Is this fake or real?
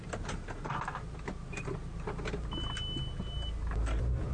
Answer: real